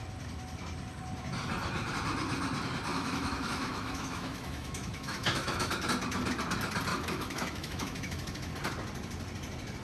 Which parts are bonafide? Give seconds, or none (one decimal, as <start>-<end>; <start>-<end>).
0.0-2.9; 5.7-6.9; 8.5-9.8